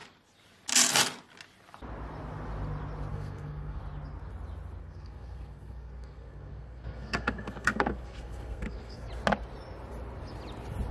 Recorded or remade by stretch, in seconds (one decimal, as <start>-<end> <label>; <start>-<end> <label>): 0.0-3.1 recorded; 3.1-3.8 remade; 3.8-4.8 recorded; 4.8-9.1 remade; 9.1-10.9 recorded